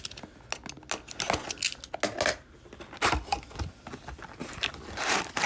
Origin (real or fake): real